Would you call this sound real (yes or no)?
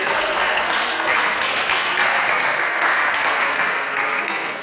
no